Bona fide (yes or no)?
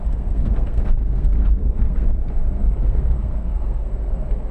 no